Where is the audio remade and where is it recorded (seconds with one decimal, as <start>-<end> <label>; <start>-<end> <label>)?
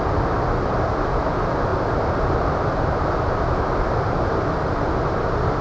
0.0-5.6 recorded